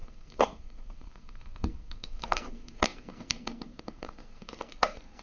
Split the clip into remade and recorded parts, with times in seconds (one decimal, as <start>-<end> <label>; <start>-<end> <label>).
0.0-5.2 remade